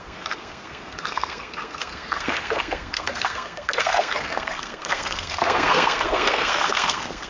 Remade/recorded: remade